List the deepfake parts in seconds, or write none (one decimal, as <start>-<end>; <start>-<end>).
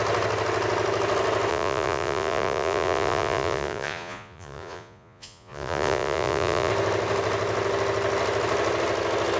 1.5-6.7